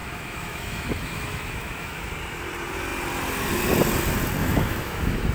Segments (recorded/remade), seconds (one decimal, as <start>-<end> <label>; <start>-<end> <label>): 0.0-2.1 remade; 2.1-4.4 recorded; 4.4-5.3 remade